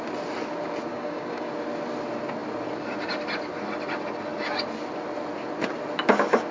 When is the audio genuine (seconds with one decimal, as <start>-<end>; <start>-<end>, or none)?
0.0-0.9; 1.5-6.5